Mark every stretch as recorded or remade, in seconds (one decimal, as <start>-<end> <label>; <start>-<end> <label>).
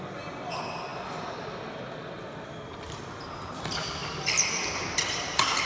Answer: 0.0-4.0 recorded; 4.0-5.7 remade